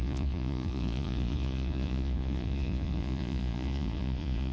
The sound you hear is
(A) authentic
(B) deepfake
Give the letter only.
B